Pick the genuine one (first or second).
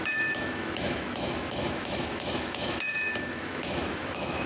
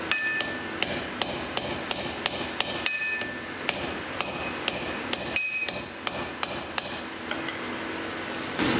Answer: second